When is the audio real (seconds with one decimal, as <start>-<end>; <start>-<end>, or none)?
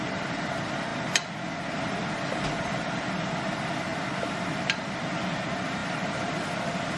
0.0-5.8; 6.6-7.0